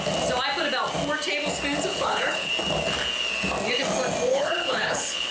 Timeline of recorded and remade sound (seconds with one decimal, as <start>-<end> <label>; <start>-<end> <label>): 0.0-1.9 recorded; 1.9-2.5 remade; 2.5-4.3 recorded; 4.3-5.3 remade